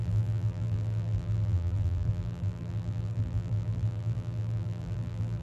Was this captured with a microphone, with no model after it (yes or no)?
no